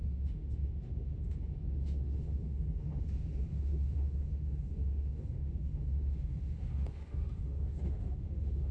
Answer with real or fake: fake